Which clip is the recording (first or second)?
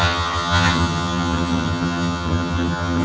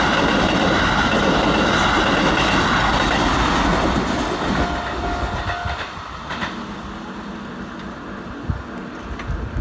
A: second